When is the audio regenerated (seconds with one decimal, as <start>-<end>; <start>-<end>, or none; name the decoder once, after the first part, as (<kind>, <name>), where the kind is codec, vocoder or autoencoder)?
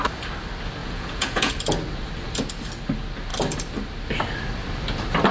0.8-1.5 (vocoder, Vocos)